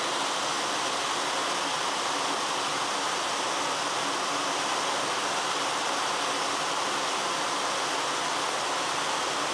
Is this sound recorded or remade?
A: recorded